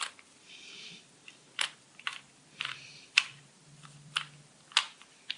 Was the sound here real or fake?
fake